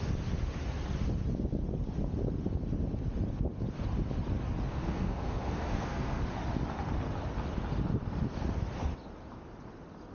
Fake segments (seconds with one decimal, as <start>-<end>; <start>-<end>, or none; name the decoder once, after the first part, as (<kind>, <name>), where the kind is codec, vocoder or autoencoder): 4.7-6.2 (codec, SNAC)